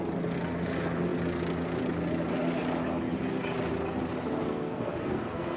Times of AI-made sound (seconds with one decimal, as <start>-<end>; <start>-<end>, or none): 4.4-5.6